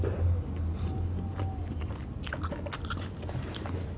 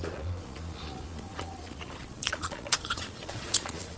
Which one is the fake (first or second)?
second